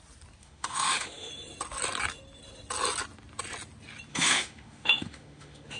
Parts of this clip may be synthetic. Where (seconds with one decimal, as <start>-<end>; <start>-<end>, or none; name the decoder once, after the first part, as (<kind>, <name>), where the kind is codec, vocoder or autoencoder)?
0.4-1.3 (autoencoder, DAC-VAE); 4.1-5.8